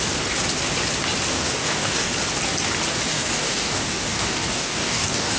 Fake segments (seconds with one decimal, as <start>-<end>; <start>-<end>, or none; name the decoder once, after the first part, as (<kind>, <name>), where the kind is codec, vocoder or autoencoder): 1.3-2.1 (codec, DAC); 3.1-5.4